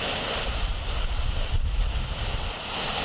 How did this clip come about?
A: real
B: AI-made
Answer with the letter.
A